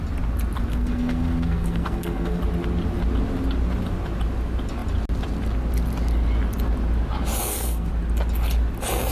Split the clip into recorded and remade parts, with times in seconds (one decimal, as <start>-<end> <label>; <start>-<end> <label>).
0.0-0.7 recorded; 0.7-2.4 remade; 2.4-7.4 recorded; 7.4-7.9 remade; 7.9-9.1 recorded